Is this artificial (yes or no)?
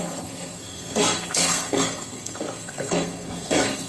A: yes